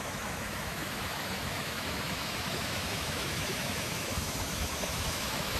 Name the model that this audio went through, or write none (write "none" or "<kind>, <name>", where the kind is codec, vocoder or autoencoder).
autoencoder, DAC-VAE